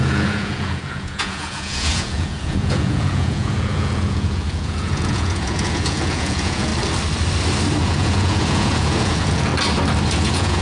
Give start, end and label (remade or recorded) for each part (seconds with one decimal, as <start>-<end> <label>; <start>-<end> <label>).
0.0-6.7 remade; 6.7-7.8 recorded; 7.8-9.5 remade; 9.5-10.2 recorded; 10.2-10.6 remade